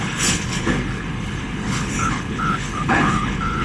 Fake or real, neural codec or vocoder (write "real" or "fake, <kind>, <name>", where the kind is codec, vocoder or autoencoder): fake, codec, HILCodec